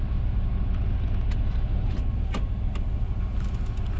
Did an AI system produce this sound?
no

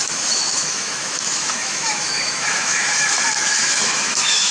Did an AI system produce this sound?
yes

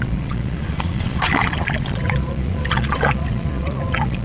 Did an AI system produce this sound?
yes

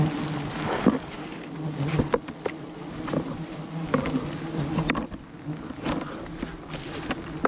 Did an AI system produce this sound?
no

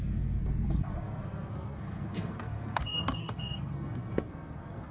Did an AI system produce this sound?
yes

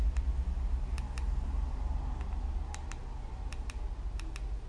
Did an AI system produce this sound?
no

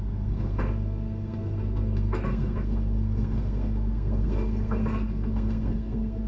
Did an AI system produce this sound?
yes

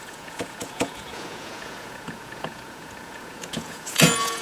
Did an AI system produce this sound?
yes